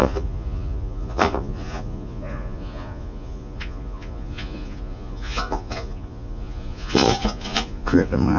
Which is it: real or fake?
fake